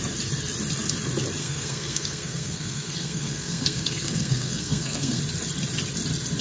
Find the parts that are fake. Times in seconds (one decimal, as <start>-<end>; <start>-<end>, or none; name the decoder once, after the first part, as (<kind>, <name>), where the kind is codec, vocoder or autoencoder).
1.4-5.2 (codec, SNAC)